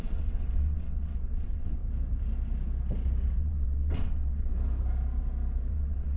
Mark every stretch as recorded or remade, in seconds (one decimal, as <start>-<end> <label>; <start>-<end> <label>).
0.0-1.8 remade; 1.8-3.4 recorded; 3.4-4.5 remade; 4.5-5.7 recorded; 5.7-6.2 remade